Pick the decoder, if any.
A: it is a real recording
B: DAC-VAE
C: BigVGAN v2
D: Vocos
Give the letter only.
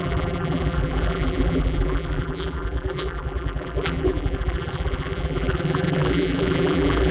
C